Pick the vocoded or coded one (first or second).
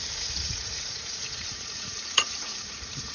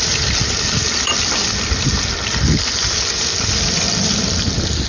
first